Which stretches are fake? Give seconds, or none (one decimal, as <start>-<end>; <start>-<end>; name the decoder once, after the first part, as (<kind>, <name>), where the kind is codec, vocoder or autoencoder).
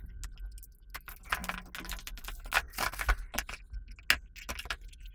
none